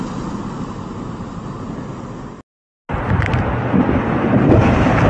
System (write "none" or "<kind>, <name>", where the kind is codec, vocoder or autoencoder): none